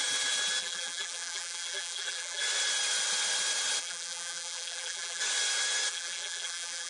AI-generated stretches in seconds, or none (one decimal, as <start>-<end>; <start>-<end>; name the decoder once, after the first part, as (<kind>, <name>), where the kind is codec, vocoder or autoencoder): 0.6-2.4 (vocoder, BigVGAN v2); 3.8-5.2; 5.9-6.9